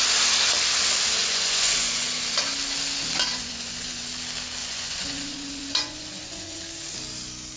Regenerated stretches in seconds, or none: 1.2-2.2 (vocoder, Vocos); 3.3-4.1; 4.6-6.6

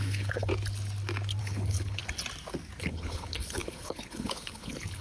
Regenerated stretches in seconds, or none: 0.0-0.5 (codec, HILCodec); 1.4-2.0; 2.8-5.0

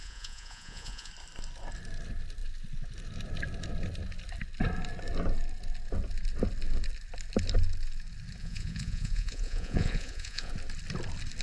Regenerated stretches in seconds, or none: 0.0-1.1 (vocoder, Vocos); 8.4-10.5

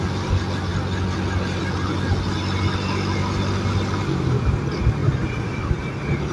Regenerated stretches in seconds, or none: none

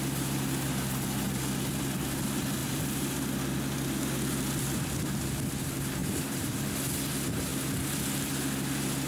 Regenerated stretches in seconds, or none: 2.6-3.1 (vocoder, BigVGAN v2); 6.0-6.5

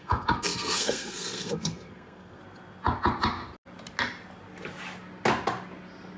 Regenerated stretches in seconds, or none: 0.0-2.4 (codec, SNAC)

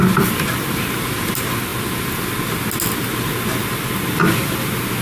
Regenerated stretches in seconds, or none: none